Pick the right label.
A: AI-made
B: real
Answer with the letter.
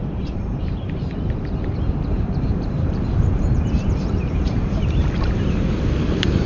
A